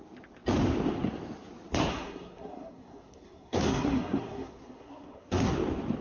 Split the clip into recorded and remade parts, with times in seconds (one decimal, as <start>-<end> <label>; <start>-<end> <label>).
0.0-1.9 recorded; 1.9-5.5 remade; 5.5-6.0 recorded